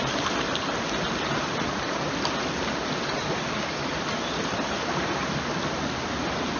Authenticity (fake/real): real